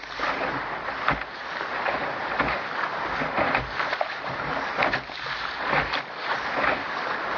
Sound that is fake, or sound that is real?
real